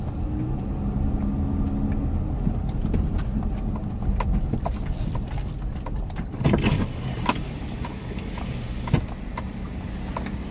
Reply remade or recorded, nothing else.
recorded